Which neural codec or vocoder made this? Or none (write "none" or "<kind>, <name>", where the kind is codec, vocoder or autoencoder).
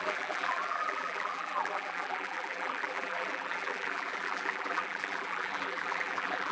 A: vocoder, BigVGAN v2